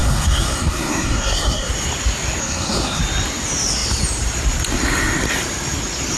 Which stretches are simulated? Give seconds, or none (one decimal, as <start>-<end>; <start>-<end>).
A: 0.0-1.7; 2.4-3.0